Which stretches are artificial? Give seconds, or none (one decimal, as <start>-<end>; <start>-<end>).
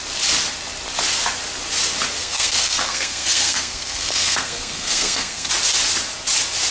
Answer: 2.2-5.5